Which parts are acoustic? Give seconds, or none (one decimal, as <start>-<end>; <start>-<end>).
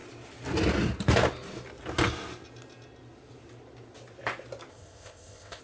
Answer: 0.0-4.7